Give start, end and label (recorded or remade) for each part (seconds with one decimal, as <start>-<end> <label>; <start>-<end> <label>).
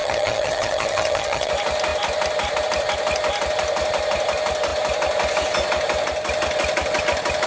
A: 0.0-1.5 remade; 1.5-7.5 recorded